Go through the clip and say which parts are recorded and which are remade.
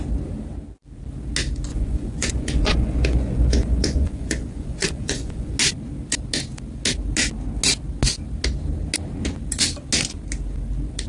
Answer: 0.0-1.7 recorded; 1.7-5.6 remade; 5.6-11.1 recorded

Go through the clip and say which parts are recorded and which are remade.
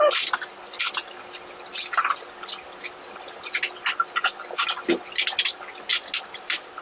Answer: 0.0-6.8 recorded